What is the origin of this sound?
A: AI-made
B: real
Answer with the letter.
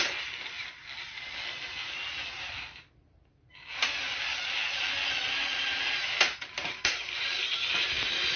B